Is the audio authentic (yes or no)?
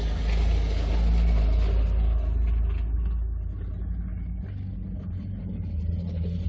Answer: yes